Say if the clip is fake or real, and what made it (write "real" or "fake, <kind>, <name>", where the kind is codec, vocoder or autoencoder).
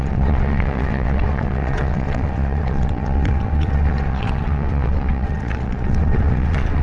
fake, vocoder, WaveNeXt